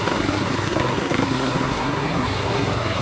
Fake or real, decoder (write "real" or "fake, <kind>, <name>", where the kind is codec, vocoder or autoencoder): fake, codec, SNAC